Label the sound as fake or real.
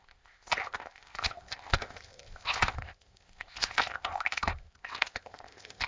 fake